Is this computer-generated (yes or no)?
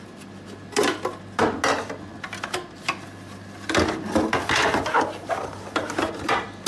no